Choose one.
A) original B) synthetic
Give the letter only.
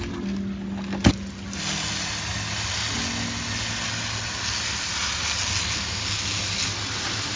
A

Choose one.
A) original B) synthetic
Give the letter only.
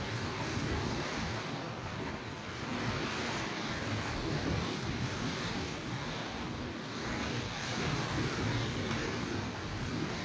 B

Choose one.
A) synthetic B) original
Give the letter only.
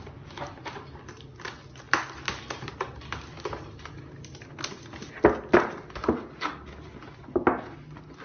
B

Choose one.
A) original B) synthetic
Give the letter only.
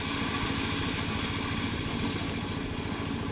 A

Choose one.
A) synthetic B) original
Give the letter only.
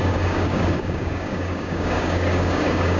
A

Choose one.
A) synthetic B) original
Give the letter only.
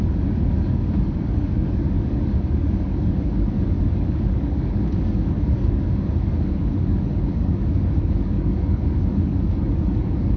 A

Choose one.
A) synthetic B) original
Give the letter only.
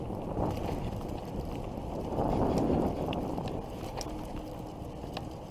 B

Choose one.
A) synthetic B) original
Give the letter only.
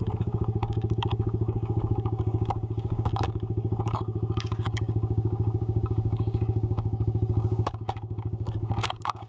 A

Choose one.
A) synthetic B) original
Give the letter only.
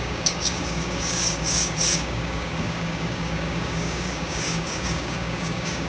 A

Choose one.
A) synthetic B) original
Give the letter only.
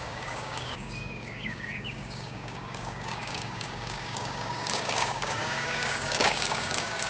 A